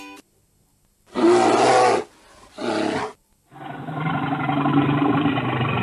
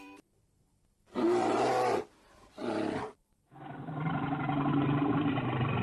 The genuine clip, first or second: first